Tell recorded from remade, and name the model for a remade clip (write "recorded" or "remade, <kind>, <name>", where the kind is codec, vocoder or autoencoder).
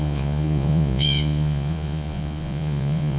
remade, vocoder, Vocos